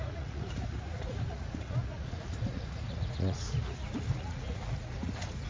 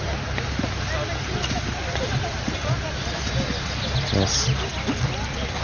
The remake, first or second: first